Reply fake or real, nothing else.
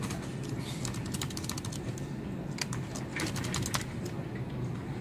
real